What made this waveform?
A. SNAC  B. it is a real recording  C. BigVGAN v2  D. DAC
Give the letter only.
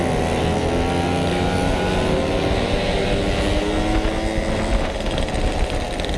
B